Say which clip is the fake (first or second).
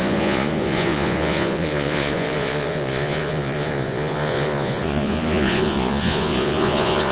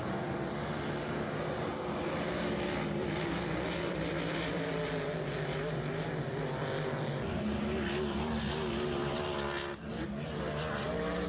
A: first